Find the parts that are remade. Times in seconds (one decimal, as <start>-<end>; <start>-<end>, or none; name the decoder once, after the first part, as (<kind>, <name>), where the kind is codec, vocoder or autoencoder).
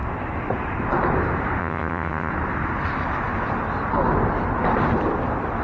1.6-2.3 (vocoder, HiFi-GAN)